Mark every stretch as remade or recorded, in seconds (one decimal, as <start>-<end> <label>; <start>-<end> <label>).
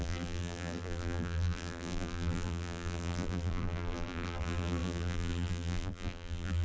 0.0-6.6 remade